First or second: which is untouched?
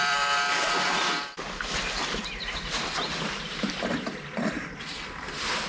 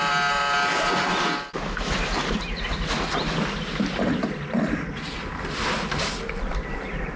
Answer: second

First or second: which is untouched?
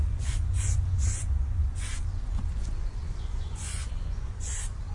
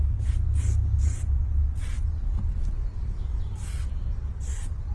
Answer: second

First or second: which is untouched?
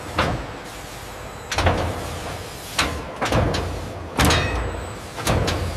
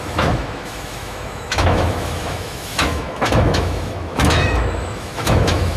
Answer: first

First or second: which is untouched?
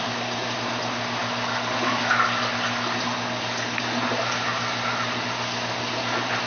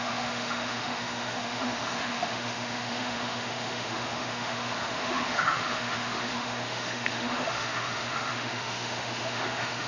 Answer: first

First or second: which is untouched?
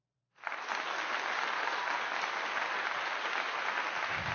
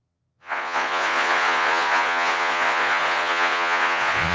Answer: first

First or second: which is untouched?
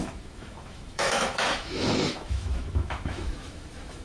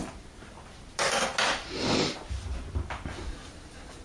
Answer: second